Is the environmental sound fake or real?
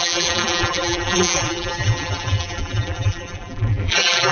fake